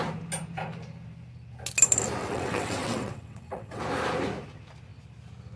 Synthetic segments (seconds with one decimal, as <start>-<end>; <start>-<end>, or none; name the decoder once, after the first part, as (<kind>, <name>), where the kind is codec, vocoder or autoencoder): 2.2-3.8 (vocoder, WaveNeXt)